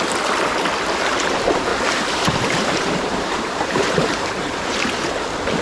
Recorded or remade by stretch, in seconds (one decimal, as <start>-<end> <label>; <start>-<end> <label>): 0.0-1.7 recorded; 1.7-5.1 remade; 5.1-5.6 recorded